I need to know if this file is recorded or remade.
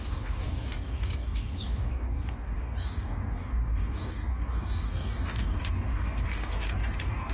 remade